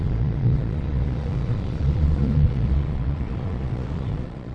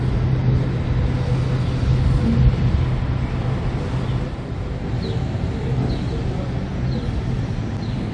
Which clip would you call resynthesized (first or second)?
first